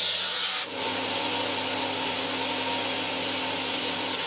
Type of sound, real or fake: real